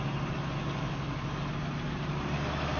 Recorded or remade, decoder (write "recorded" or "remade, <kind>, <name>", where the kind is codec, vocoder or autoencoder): recorded